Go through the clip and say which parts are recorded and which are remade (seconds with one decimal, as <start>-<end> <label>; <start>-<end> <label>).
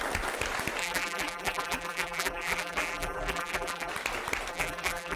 0.0-0.8 recorded; 0.8-3.9 remade; 3.9-4.5 recorded; 4.5-5.2 remade